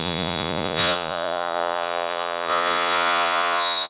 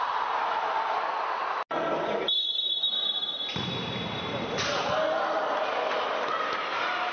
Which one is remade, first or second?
first